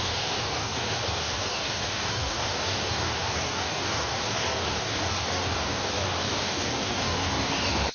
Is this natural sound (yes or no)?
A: no